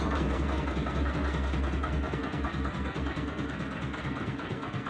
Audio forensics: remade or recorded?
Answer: remade